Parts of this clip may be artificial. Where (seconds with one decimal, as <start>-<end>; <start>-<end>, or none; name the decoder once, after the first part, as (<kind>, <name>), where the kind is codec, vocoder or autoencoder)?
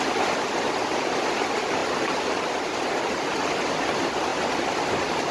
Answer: none